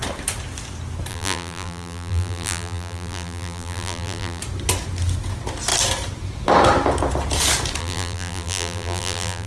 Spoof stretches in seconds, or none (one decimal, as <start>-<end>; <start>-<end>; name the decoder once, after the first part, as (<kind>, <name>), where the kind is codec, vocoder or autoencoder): 1.1-4.4 (vocoder, BigVGAN v2); 7.8-9.5